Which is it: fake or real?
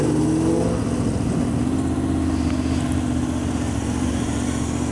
real